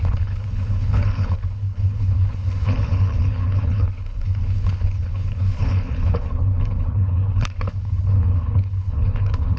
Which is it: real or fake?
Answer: fake